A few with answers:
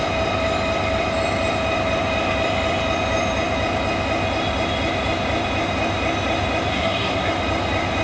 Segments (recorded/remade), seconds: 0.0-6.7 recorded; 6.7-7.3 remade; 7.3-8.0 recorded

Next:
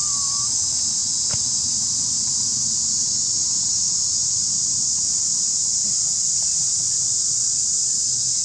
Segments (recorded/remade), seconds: 0.0-8.4 recorded